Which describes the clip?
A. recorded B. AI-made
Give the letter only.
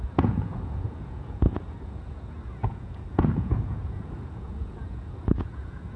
B